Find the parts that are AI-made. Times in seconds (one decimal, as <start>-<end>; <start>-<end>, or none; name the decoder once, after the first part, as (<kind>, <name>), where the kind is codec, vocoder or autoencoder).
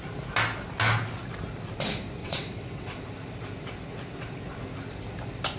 2.2-3.0 (vocoder, WaveNeXt)